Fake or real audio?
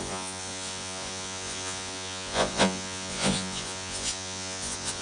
fake